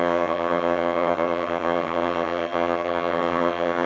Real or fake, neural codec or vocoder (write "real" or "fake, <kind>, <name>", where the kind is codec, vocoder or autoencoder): fake, vocoder, HiFi-GAN